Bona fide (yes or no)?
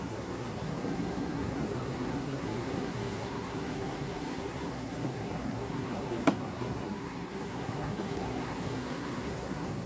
no